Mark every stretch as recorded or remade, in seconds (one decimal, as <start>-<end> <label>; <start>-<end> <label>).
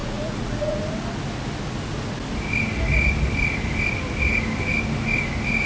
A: 0.0-0.8 remade; 0.8-5.7 recorded